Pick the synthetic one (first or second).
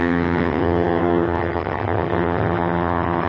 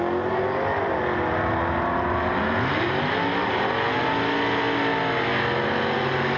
first